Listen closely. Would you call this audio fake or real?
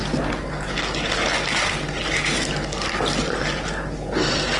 real